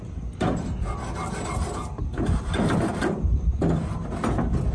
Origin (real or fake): real